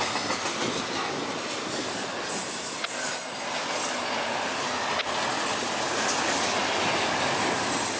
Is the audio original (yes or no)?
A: yes